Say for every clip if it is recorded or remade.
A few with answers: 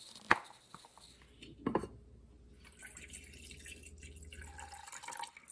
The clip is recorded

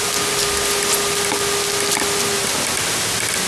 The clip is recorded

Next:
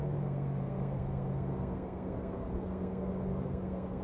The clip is remade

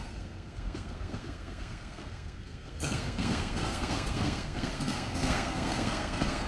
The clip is remade